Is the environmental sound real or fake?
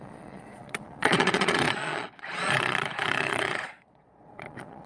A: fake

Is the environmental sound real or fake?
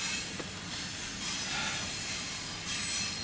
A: real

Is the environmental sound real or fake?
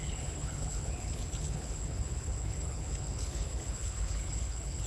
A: fake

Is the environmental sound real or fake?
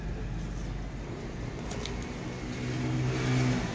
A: real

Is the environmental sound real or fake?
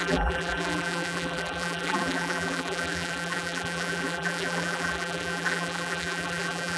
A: fake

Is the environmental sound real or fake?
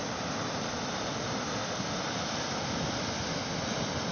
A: real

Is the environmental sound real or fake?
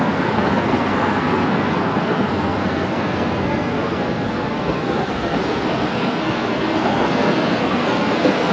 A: fake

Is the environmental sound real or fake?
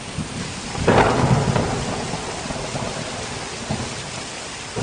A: real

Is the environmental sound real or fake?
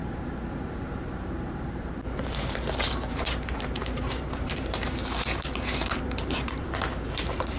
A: fake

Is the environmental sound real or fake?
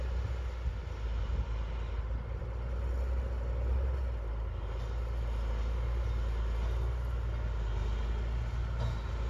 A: real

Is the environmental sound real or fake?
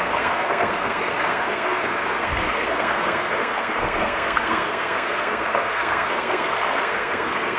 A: fake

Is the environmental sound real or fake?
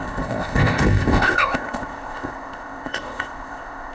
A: fake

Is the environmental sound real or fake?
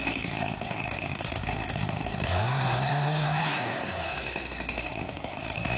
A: fake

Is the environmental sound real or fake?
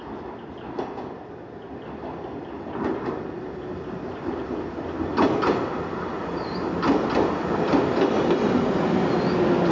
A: real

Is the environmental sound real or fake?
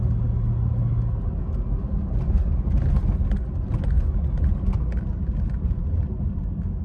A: real